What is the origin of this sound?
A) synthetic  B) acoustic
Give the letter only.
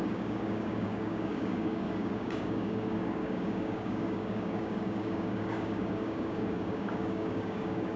A